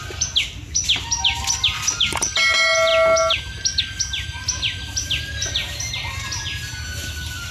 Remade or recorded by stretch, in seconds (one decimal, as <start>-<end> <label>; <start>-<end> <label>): 0.0-7.5 recorded

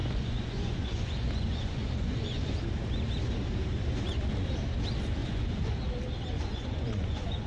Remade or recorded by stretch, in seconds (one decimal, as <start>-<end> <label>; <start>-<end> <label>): 0.0-2.6 remade; 2.6-5.2 recorded; 5.2-5.8 remade; 5.8-6.5 recorded; 6.5-7.5 remade

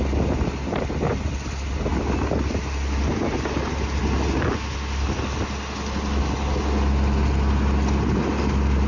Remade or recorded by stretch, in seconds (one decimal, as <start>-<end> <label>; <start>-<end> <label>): 0.0-8.9 recorded